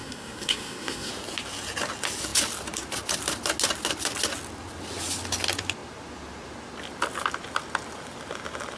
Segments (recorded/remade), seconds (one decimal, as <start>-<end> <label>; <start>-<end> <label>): 0.0-1.1 remade; 1.1-8.8 recorded